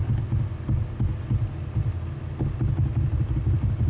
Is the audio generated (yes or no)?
no